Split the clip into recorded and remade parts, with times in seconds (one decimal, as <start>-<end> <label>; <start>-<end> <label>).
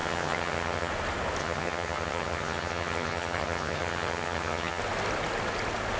0.0-0.9 remade; 0.9-1.4 recorded; 1.4-4.8 remade; 4.8-6.0 recorded